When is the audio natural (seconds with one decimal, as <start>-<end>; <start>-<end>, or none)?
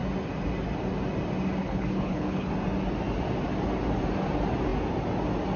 0.0-1.6; 2.5-5.6